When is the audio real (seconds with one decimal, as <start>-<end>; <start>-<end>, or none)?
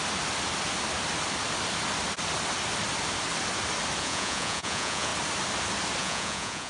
0.0-4.0; 5.1-6.0